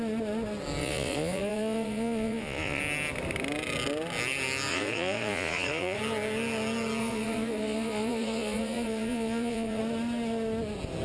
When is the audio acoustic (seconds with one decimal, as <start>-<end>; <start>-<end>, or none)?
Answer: 0.0-0.8; 2.8-4.7; 6.0-7.0; 9.8-11.0